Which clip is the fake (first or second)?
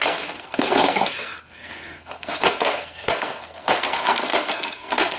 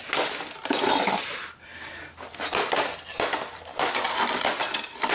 first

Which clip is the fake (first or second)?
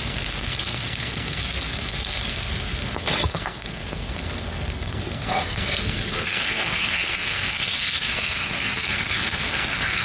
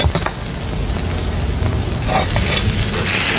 first